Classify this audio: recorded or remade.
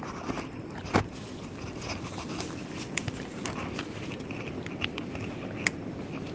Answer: recorded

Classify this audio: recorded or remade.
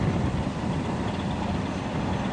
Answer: recorded